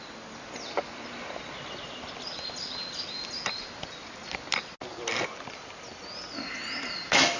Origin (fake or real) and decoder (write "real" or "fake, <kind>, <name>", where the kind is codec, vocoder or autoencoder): real